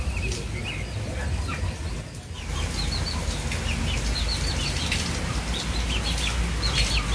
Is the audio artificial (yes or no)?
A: no